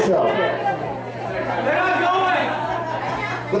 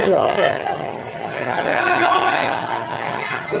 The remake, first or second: second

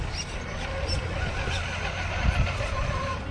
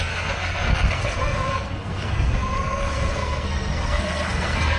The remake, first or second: second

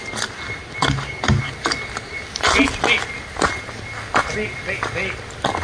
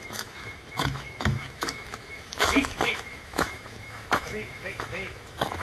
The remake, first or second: second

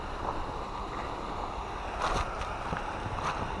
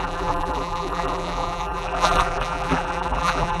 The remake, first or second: second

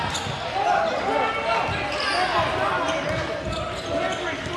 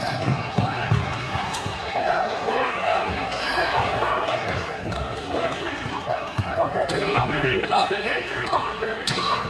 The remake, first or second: second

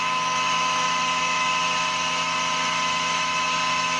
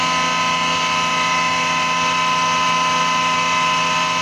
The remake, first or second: first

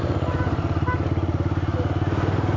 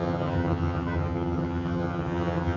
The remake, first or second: second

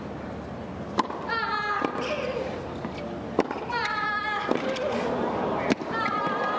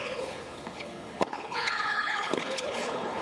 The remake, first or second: second